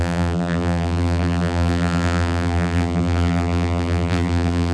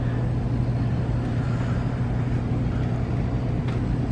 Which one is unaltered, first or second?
second